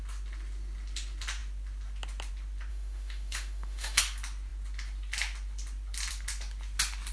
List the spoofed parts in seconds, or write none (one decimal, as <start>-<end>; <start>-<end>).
2.7-4.0